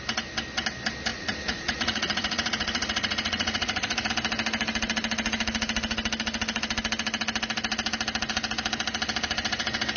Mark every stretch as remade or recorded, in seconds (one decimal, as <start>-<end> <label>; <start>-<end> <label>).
0.0-1.1 recorded; 1.1-4.1 remade; 4.1-10.0 recorded